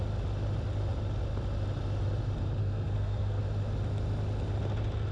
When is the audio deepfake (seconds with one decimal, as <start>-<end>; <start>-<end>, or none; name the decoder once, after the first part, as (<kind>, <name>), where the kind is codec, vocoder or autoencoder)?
2.6-3.4 (codec, SNAC)